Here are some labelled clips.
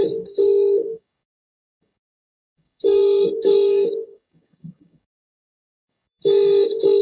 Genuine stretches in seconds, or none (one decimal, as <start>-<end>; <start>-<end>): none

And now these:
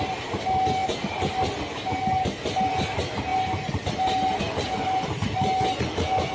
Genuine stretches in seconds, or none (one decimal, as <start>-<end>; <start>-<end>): 0.0-6.3

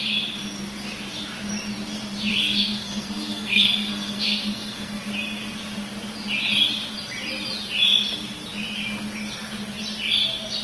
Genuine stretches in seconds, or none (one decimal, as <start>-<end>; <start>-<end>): 0.0-2.3; 5.0-10.6

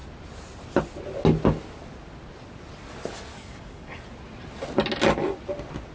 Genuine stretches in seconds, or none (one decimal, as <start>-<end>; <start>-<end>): 0.0-3.3; 4.0-5.9

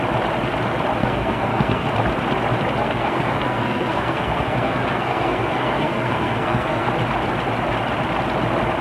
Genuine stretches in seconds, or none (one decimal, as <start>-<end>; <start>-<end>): 0.0-1.0; 1.9-2.8; 6.9-8.8